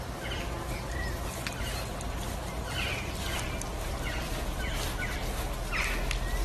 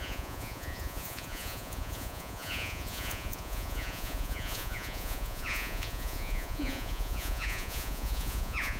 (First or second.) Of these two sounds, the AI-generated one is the second